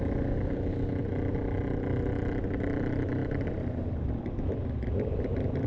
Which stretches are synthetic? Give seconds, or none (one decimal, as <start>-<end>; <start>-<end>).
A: none